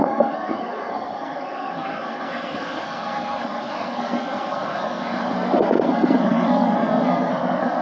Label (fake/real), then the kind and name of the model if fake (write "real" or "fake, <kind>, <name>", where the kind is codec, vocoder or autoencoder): fake, codec, SNAC